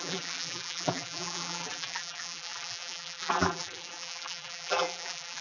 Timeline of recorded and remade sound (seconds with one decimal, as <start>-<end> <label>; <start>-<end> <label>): 0.0-5.4 remade